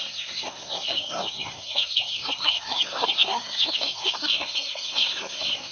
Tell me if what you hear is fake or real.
fake